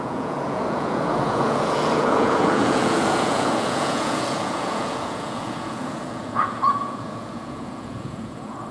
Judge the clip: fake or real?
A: fake